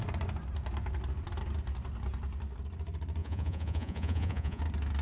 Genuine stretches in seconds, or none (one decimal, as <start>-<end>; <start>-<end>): 0.0-3.2; 4.6-5.0